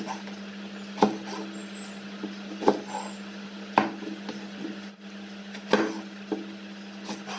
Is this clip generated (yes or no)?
no